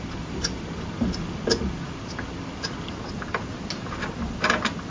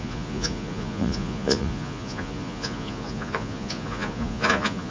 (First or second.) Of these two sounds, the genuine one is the first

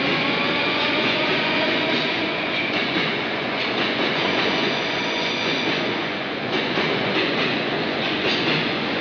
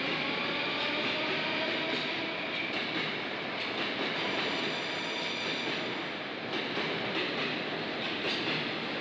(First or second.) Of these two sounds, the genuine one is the second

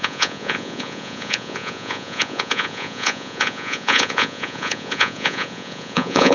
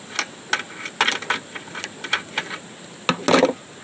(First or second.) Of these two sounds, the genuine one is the second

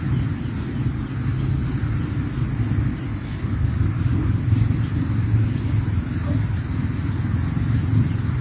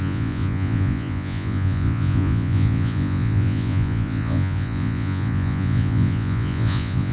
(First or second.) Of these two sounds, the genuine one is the first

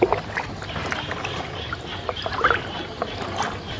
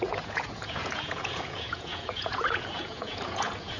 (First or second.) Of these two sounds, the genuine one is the first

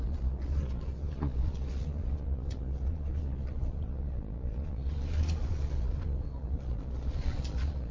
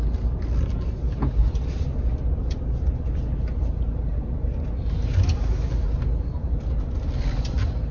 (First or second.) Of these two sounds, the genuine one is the second